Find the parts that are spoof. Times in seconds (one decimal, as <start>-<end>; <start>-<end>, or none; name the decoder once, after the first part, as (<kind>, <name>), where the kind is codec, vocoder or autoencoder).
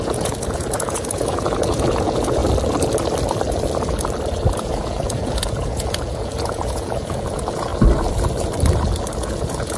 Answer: 0.0-2.4 (vocoder, Vocos); 4.5-7.7; 9.2-9.8